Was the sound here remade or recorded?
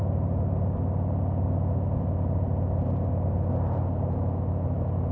recorded